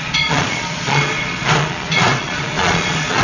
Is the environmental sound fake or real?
fake